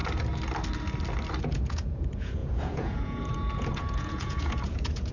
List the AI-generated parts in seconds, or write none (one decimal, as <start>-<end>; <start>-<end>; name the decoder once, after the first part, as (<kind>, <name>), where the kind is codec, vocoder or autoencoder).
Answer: 1.4-5.1 (vocoder, Vocos)